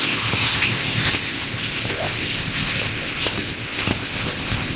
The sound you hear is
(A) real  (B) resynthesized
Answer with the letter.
B